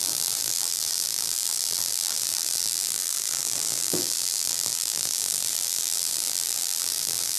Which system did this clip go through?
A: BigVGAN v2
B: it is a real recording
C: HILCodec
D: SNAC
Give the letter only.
A